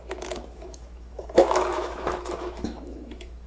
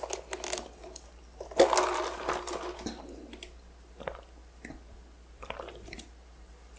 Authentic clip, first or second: second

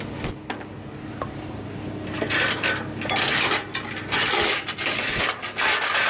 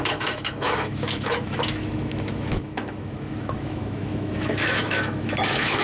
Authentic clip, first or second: first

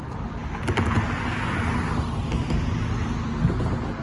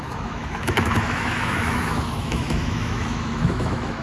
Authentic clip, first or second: first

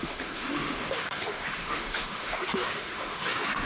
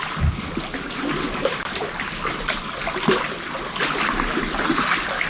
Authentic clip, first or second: second